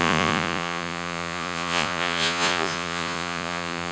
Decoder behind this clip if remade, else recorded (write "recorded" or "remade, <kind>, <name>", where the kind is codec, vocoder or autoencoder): remade, vocoder, Vocos